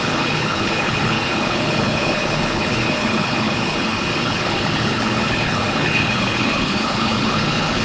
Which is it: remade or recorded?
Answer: remade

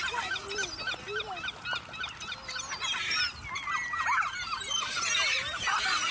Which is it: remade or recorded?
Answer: recorded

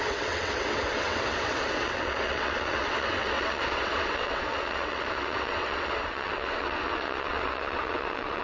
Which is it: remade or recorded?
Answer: remade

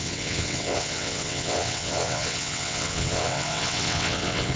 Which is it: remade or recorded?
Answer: remade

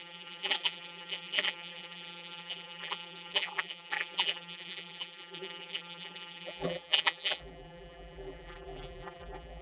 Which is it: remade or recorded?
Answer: remade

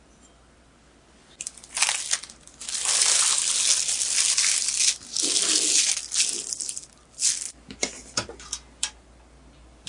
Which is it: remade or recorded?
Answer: recorded